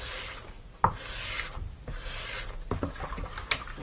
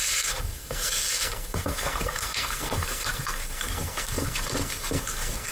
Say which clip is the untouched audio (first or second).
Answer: first